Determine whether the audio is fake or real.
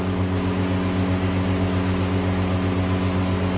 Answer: real